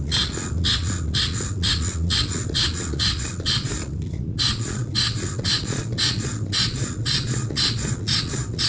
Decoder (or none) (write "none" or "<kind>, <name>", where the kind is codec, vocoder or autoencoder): vocoder, Vocos